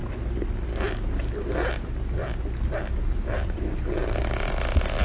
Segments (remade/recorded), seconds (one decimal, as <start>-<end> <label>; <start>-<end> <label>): 0.0-5.0 recorded